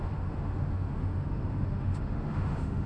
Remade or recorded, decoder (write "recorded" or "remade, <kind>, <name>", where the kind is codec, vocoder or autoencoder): remade, autoencoder, DAC-VAE